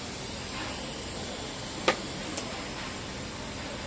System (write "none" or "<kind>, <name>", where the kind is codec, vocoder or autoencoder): none